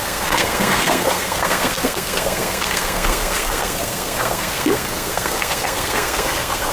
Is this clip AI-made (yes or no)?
yes